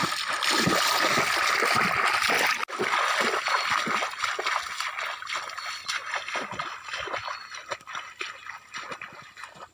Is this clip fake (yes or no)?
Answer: no